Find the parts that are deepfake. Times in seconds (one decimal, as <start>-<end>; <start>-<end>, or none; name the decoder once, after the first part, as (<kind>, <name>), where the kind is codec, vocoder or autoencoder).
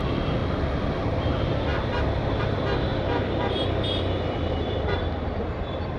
0.0-0.4 (vocoder, BigVGAN v2); 1.0-6.0